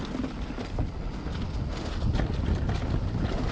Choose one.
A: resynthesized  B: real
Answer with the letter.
B